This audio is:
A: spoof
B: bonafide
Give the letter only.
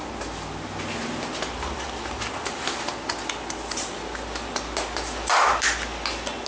B